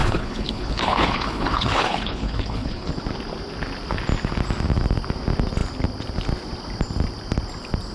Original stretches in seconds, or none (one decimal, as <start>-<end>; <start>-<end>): 2.9-7.9